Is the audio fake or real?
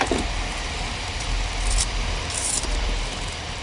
fake